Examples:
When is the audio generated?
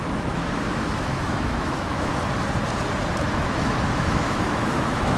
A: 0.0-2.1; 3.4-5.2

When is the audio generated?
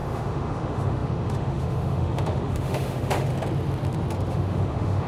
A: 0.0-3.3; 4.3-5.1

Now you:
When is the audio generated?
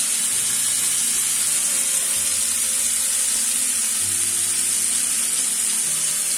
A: none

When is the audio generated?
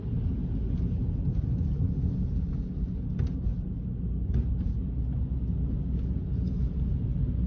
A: none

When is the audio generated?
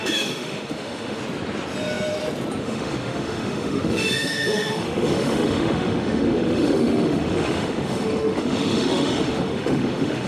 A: 0.0-1.2; 2.6-10.3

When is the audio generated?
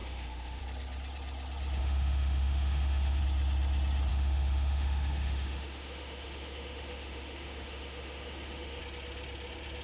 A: 0.0-0.6; 1.8-3.2; 4.1-8.8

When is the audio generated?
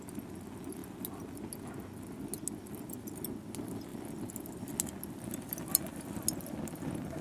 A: none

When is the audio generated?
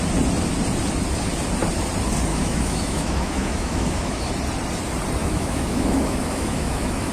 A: 2.3-4.3; 5.2-7.1